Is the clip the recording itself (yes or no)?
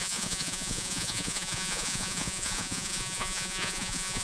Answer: no